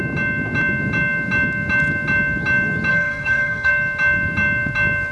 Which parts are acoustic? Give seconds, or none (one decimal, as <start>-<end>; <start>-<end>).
0.0-2.9; 3.7-5.1